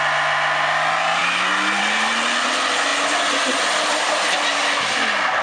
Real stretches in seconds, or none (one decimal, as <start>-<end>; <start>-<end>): 0.0-5.4